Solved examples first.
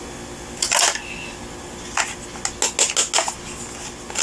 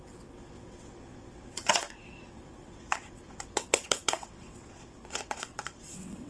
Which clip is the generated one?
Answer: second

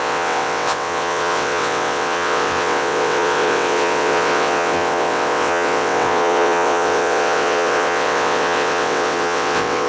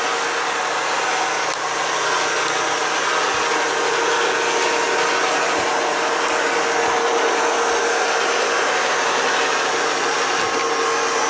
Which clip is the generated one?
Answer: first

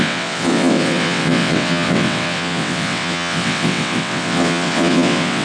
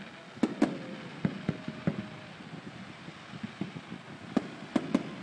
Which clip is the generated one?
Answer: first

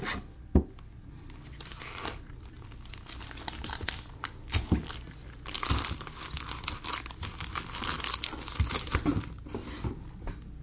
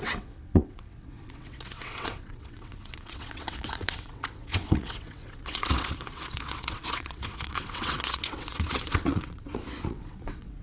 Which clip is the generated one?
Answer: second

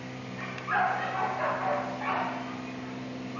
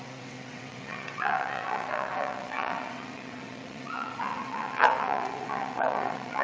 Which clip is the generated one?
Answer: second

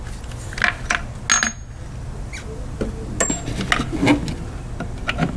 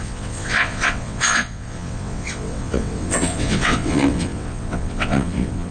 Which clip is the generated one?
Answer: second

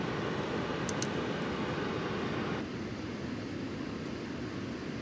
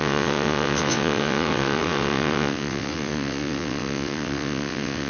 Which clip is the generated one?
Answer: second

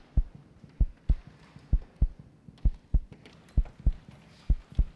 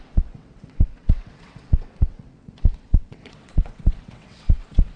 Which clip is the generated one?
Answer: second